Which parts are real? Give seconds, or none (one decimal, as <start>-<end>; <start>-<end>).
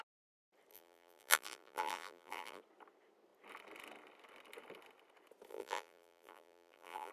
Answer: 0.0-0.7; 2.6-5.5